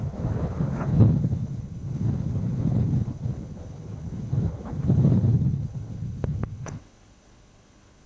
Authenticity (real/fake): fake